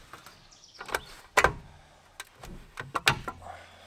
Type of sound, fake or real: real